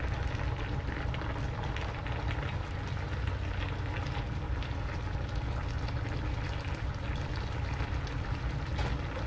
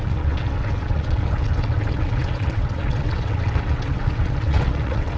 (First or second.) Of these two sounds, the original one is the first